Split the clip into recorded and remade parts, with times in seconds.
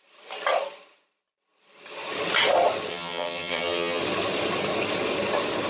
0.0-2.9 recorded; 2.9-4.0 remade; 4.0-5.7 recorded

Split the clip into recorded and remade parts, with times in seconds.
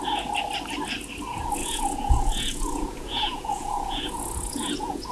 0.0-1.6 recorded; 1.6-5.1 remade